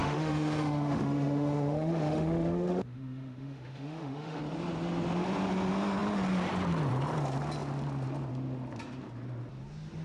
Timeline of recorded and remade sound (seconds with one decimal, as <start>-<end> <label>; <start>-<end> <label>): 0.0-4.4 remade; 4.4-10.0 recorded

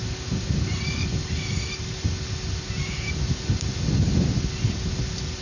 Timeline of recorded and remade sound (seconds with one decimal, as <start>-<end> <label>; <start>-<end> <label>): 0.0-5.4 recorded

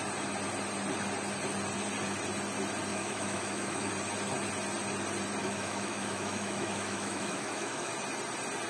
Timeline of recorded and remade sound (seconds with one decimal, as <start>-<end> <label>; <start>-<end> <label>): 0.0-2.9 recorded; 2.9-3.9 remade; 3.9-5.4 recorded; 5.4-7.9 remade; 7.9-8.7 recorded

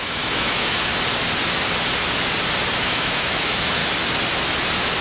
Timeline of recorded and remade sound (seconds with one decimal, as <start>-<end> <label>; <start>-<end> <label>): 0.0-0.9 remade; 0.9-2.8 recorded; 2.8-3.8 remade; 3.8-5.0 recorded